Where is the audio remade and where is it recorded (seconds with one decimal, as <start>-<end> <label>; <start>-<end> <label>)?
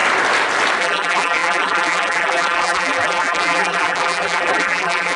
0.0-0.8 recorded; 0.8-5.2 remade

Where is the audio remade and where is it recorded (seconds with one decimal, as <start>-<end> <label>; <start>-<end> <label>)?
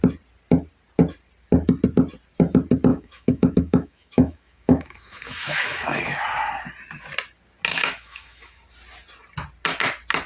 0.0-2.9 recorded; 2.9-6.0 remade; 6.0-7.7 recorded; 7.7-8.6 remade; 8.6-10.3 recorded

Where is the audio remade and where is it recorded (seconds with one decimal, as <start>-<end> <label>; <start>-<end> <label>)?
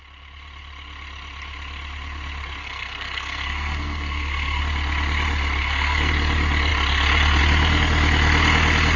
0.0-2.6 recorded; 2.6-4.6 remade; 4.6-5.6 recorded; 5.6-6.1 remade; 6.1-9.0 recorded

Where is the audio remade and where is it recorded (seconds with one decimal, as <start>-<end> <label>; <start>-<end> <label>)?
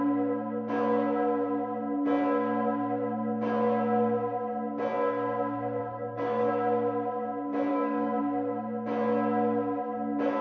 0.0-5.8 recorded; 5.8-6.5 remade; 6.5-7.7 recorded; 7.7-8.2 remade; 8.2-10.4 recorded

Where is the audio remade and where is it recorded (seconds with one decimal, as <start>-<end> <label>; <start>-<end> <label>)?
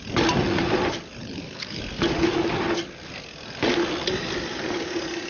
0.0-1.2 recorded; 1.2-1.8 remade; 1.8-5.3 recorded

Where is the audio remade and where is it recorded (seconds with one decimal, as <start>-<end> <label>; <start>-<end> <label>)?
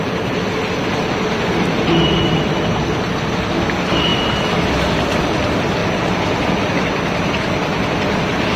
0.0-8.6 recorded